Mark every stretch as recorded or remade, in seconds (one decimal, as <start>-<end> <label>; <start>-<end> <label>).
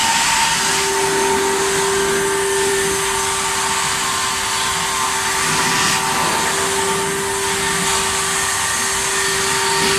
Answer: 0.0-10.0 recorded